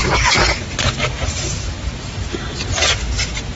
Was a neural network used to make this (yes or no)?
no